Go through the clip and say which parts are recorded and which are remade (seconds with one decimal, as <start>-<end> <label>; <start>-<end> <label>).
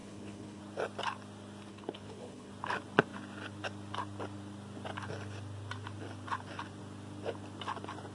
0.0-0.6 remade; 0.6-1.7 recorded; 1.7-2.5 remade; 2.5-8.1 recorded